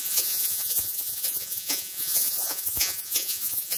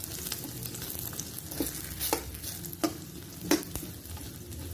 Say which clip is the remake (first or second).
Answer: first